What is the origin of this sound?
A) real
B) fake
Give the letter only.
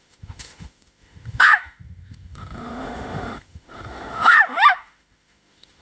B